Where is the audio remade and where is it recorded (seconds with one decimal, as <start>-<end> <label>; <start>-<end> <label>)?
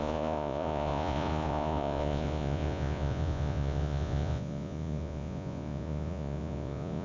0.0-7.0 remade